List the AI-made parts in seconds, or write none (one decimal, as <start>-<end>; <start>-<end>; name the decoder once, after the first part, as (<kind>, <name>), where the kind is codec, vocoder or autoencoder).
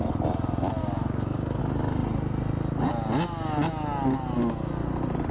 0.8-1.6 (codec, DAC)